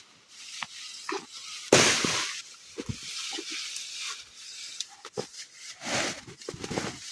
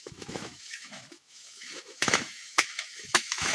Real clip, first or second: first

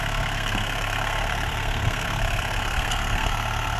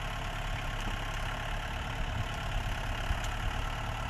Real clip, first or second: second